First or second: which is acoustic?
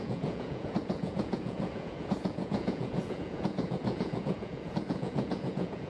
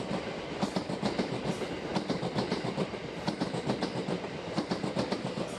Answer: second